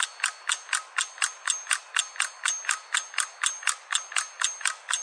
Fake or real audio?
real